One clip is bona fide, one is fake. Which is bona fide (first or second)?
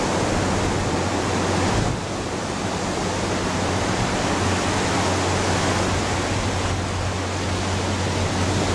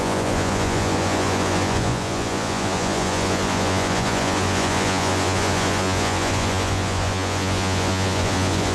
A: first